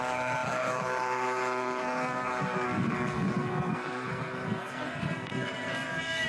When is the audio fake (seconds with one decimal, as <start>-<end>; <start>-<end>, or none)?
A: 0.0-6.3